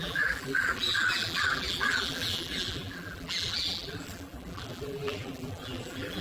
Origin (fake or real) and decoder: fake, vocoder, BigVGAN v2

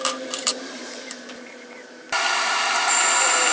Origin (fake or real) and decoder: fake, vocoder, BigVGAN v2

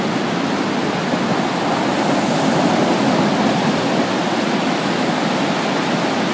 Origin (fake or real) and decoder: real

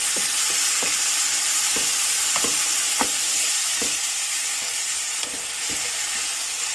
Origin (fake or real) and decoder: real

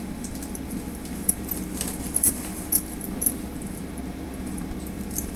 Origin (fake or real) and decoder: fake, vocoder, BigVGAN v2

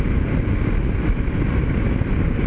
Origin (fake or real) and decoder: real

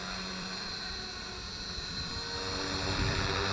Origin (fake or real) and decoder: fake, vocoder, BigVGAN v2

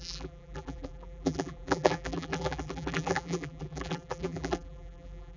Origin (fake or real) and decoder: fake, vocoder, BigVGAN v2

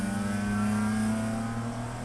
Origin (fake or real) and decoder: real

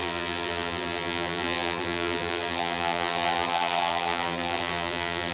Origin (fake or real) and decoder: fake, vocoder, BigVGAN v2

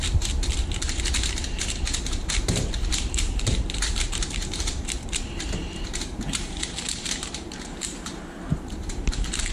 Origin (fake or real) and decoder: fake, vocoder, BigVGAN v2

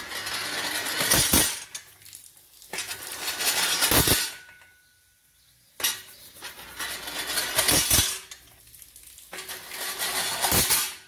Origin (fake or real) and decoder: real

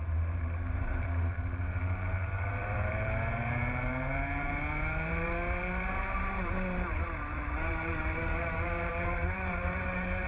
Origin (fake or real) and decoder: fake, vocoder, BigVGAN v2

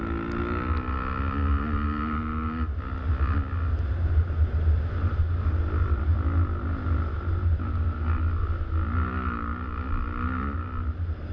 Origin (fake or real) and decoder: real